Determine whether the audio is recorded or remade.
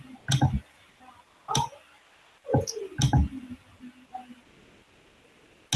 recorded